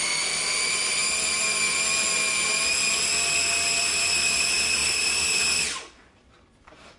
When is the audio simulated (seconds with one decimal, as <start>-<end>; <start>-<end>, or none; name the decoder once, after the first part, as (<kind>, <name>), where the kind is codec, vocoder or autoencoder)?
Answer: 0.0-1.0 (vocoder, BigVGAN v2); 3.8-7.0